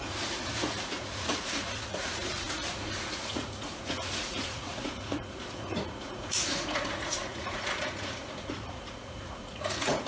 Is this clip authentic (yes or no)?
no